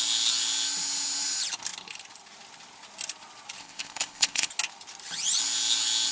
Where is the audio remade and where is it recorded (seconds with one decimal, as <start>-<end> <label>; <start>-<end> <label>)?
0.0-3.6 recorded; 3.6-4.5 remade; 4.5-6.1 recorded